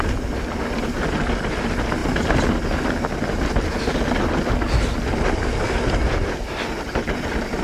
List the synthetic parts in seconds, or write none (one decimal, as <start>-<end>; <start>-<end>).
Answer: none

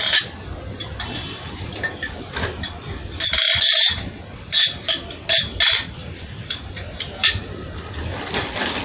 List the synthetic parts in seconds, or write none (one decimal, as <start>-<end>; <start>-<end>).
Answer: 6.0-8.0

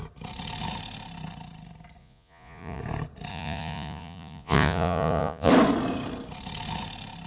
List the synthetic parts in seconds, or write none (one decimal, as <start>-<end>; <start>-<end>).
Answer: 2.0-2.8; 3.3-5.5

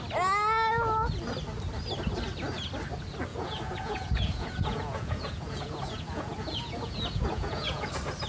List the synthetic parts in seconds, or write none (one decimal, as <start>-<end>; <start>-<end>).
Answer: 3.3-7.9

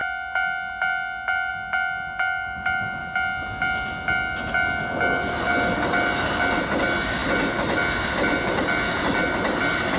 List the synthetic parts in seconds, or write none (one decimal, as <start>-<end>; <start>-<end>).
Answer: none

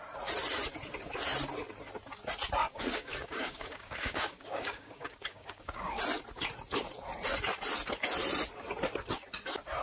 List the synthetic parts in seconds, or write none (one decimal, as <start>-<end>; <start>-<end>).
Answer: 2.6-6.0

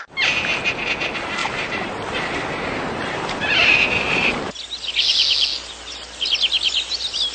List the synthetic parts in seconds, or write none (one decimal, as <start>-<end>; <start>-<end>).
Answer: 1.4-4.5

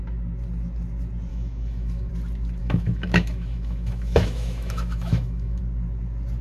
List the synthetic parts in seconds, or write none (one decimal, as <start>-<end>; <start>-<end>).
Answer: 1.3-2.1; 2.6-5.6